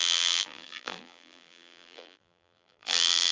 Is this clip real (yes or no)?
no